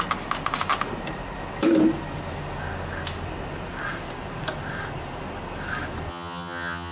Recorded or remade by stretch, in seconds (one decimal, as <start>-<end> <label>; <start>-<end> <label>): 0.0-6.1 recorded; 6.1-6.9 remade